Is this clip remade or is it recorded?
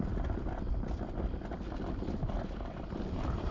recorded